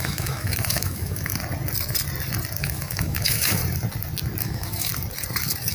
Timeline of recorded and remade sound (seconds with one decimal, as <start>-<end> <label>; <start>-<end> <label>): 0.0-1.3 remade; 1.3-2.6 recorded; 2.6-3.6 remade; 3.6-4.4 recorded; 4.4-4.9 remade; 4.9-5.7 recorded